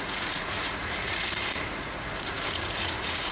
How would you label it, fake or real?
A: fake